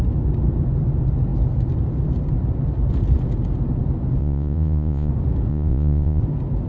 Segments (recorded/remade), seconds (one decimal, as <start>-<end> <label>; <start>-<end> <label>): 0.0-4.2 recorded; 4.2-5.1 remade; 5.1-5.5 recorded; 5.5-6.2 remade; 6.2-6.7 recorded